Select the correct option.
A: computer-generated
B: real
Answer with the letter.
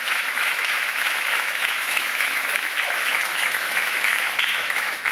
A